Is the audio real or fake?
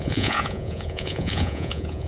fake